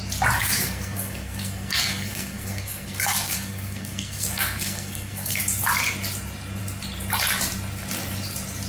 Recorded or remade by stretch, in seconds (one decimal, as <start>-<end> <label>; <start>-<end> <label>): 0.0-0.4 recorded; 0.4-5.4 remade; 5.4-8.7 recorded